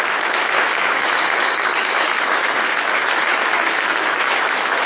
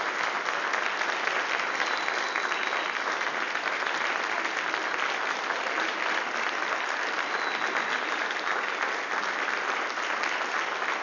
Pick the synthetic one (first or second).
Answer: first